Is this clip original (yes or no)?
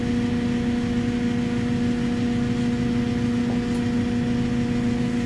yes